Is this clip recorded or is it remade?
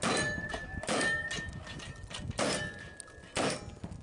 recorded